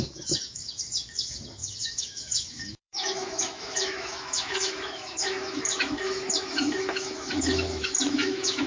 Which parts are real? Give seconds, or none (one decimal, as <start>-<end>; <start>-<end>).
none